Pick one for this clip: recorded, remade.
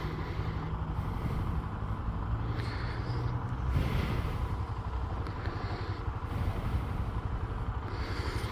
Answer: recorded